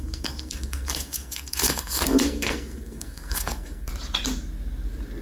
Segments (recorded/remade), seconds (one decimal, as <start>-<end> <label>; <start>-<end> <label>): 0.0-3.9 remade; 3.9-5.2 recorded